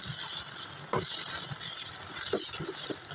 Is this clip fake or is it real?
real